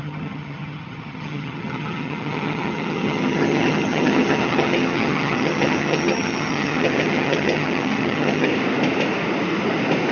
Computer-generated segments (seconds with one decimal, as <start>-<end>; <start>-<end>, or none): 0.0-8.5